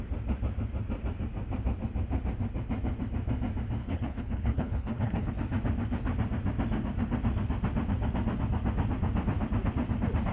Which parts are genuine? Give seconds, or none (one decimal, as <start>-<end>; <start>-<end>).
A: 0.0-3.8; 5.3-10.3